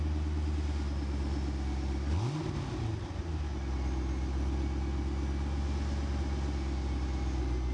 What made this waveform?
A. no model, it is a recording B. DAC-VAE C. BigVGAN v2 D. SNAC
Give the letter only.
A